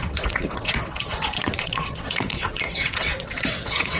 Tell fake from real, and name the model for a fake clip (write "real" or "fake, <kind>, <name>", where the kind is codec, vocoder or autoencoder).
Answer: fake, vocoder, WaveNeXt